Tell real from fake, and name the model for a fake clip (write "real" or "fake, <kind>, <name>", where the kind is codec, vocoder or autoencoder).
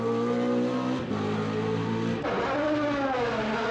real